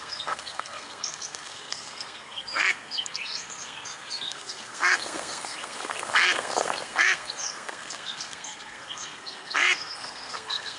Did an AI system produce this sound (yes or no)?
yes